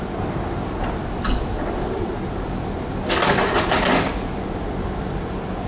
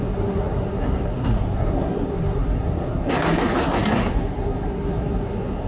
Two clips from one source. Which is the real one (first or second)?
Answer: first